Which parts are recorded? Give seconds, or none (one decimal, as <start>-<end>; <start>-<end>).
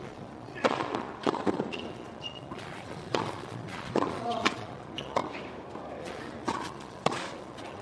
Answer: 5.2-6.0